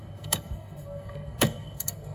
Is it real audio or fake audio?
fake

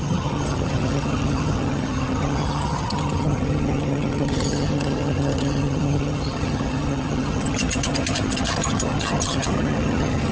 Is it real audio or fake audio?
fake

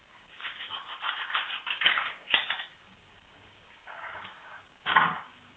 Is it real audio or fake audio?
fake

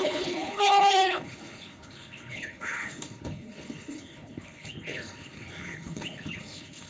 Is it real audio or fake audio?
fake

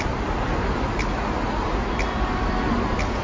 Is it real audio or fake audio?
real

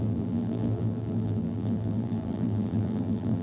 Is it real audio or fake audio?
fake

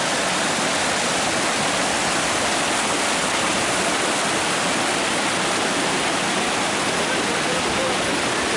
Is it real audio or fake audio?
real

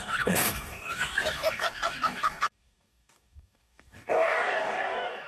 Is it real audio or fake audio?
fake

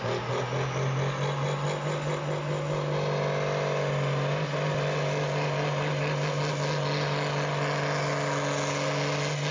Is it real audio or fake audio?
real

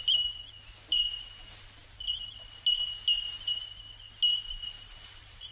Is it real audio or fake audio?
real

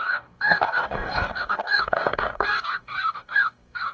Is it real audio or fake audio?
fake